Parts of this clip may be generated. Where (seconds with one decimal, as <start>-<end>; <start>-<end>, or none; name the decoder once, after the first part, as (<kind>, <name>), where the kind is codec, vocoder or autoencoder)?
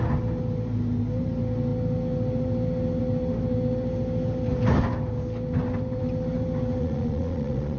6.8-7.8 (vocoder, Vocos)